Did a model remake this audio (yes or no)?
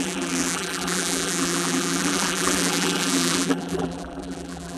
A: yes